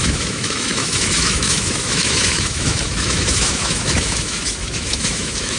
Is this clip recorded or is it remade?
remade